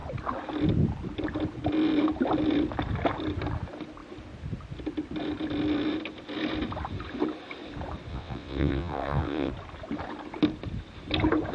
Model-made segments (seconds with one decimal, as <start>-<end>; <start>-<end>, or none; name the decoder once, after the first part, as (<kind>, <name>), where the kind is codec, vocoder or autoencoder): 8.1-9.5 (vocoder, WaveNeXt)